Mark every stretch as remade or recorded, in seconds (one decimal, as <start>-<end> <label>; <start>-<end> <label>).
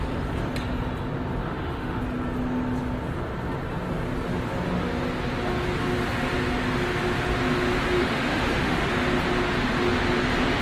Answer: 0.0-1.4 recorded; 1.4-2.0 remade; 2.0-8.0 recorded; 8.0-8.9 remade; 8.9-10.6 recorded